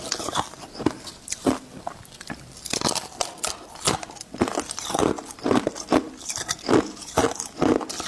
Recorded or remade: remade